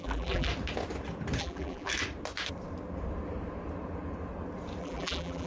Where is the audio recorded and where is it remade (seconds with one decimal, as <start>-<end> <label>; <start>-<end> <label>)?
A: 0.0-0.5 remade; 0.5-1.4 recorded; 1.4-1.9 remade; 1.9-4.8 recorded; 4.8-5.5 remade